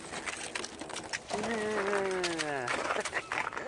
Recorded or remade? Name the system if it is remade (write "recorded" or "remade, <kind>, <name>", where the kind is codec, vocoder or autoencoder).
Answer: recorded